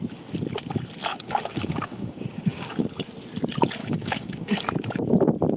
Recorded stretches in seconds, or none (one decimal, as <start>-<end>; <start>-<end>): 0.0-1.1; 2.8-3.8; 4.6-5.6